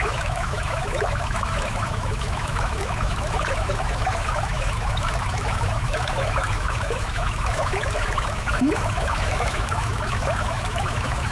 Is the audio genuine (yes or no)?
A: no